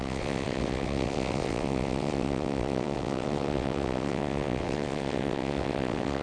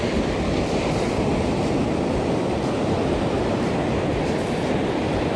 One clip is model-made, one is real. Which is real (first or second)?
second